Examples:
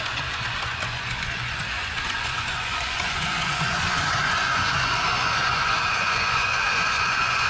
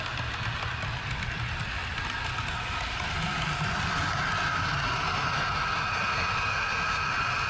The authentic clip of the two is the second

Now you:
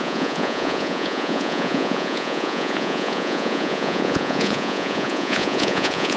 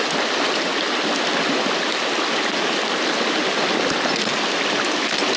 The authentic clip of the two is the second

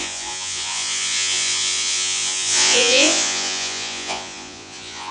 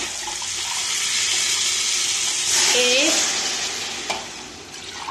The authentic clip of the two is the second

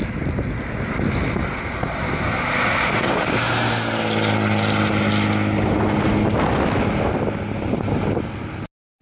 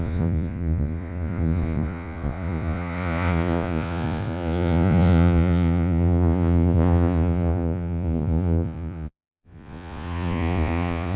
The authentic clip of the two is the first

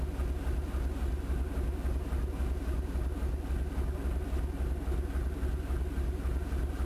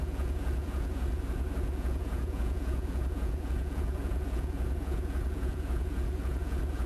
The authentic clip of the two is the first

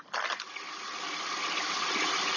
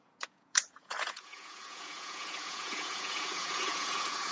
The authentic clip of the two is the first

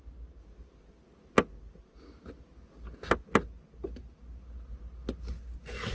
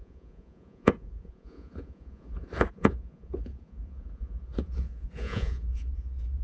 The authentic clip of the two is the first